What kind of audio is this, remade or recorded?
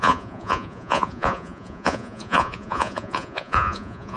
remade